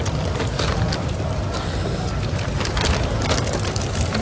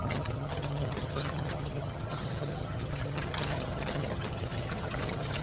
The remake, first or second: second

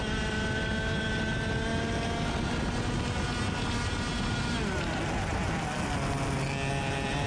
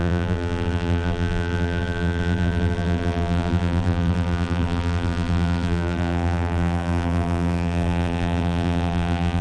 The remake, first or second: second